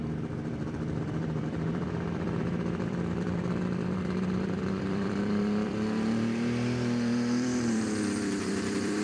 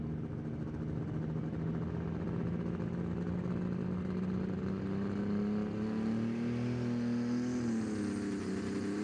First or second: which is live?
second